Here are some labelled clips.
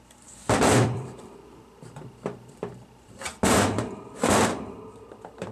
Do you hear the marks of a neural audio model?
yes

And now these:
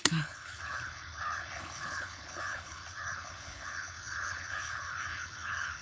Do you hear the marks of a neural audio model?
yes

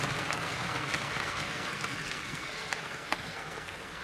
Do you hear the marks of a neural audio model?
yes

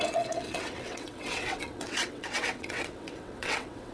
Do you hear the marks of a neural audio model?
yes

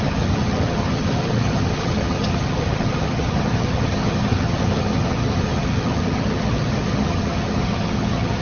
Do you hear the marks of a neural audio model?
yes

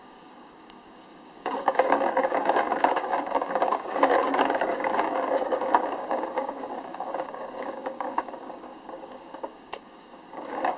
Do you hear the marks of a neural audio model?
yes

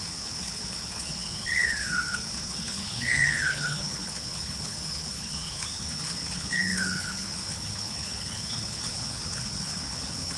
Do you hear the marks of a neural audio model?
yes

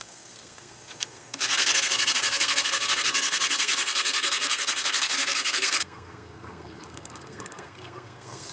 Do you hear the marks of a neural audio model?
yes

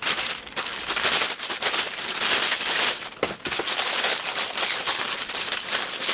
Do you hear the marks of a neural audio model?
no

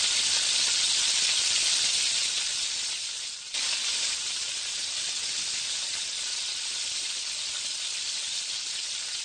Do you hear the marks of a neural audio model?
no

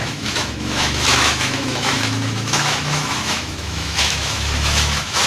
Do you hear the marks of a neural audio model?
yes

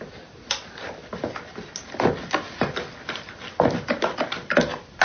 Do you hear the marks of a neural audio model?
no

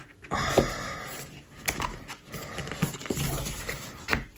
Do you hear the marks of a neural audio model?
no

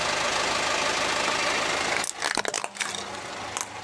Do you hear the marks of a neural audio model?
no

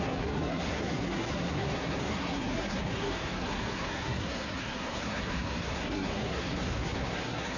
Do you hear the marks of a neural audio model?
yes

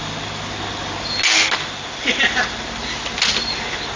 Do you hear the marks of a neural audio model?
no